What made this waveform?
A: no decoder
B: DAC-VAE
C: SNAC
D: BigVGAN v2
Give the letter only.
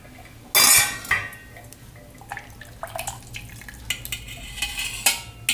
A